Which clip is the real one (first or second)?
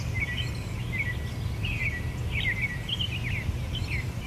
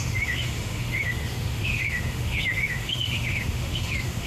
first